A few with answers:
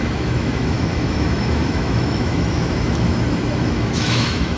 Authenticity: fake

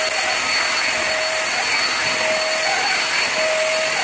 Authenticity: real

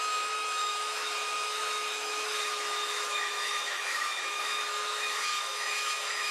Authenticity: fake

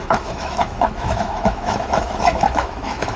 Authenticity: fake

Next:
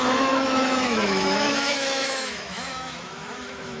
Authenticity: fake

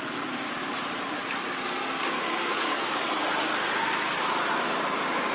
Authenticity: real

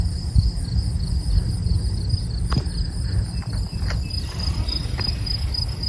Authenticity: real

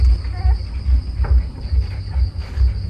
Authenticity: real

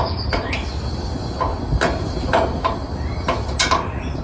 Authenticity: real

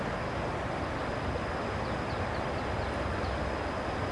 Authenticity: real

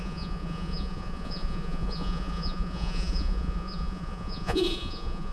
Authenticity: fake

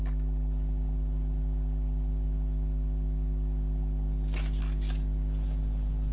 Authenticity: real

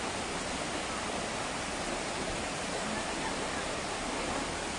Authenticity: real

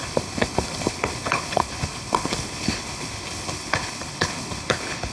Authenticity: fake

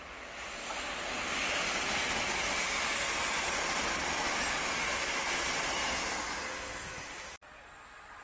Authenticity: real